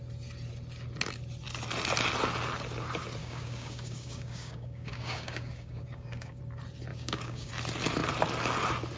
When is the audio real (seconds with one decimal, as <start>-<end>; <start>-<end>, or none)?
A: 0.0-3.2; 6.4-6.9; 7.5-9.0